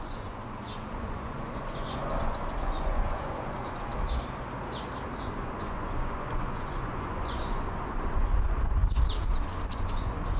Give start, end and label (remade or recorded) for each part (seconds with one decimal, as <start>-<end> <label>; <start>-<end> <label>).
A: 0.0-3.9 remade; 3.9-5.2 recorded; 5.2-8.8 remade; 8.8-9.7 recorded; 9.7-10.4 remade